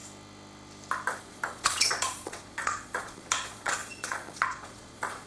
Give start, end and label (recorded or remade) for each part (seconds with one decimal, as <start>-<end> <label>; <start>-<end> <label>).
0.0-1.2 recorded; 1.2-5.3 remade